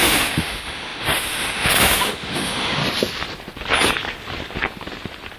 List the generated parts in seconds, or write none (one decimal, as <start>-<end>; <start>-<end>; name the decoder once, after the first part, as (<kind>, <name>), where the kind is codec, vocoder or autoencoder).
0.0-2.8 (autoencoder, DAC-VAE)